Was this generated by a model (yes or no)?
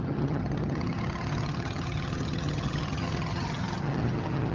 yes